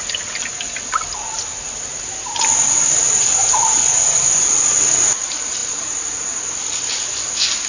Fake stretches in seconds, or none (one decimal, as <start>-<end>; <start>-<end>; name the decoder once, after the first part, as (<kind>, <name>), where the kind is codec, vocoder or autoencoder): none